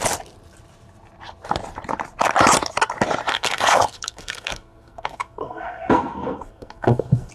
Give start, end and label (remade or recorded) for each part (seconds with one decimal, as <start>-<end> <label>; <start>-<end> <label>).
0.0-3.3 recorded; 3.3-7.3 remade